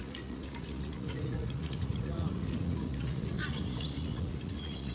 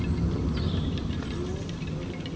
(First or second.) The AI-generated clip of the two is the first